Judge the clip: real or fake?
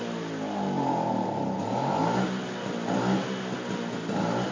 real